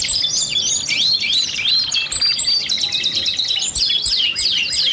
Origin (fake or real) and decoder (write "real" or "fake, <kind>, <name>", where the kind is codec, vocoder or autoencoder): fake, vocoder, BigVGAN v2